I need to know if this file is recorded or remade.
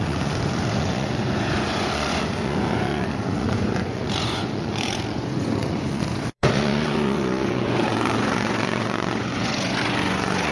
remade